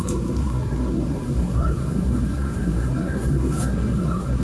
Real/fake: fake